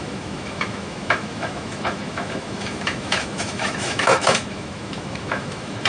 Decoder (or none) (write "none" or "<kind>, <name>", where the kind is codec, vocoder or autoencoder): autoencoder, DAC-VAE